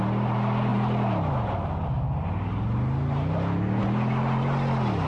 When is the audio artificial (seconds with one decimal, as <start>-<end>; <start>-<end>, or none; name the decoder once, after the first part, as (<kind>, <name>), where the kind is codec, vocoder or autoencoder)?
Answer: none